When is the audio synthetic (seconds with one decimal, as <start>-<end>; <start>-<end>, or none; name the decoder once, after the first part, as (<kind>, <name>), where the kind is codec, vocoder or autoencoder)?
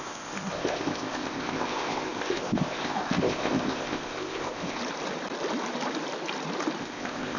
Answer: 0.0-4.8 (codec, ZipCodec); 6.8-7.4